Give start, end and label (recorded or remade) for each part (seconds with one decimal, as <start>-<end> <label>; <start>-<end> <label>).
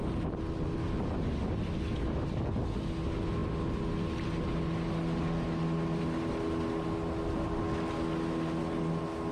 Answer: 0.0-9.3 recorded